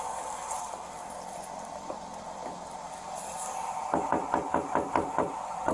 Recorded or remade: recorded